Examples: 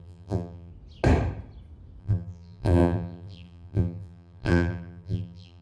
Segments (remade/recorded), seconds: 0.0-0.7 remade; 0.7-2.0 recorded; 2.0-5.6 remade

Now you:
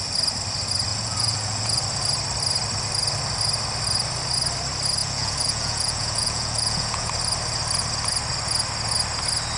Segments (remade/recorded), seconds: 0.0-0.9 recorded; 0.9-1.8 remade; 1.8-5.0 recorded; 5.0-7.1 remade; 7.1-9.6 recorded

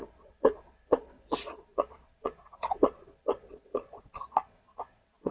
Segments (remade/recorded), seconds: 0.0-5.3 remade

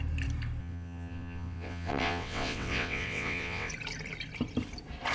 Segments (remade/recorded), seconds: 0.0-0.6 recorded; 0.6-3.7 remade; 3.7-5.1 recorded

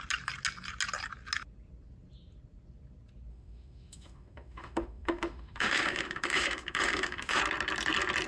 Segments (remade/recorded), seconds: 0.0-3.3 recorded; 3.3-7.4 remade; 7.4-8.3 recorded

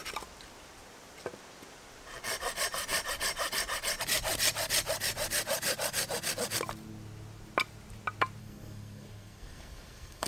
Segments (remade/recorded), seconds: 0.0-8.4 recorded; 8.4-10.3 remade